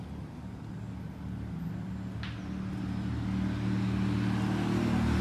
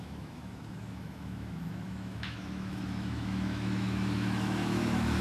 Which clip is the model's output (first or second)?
second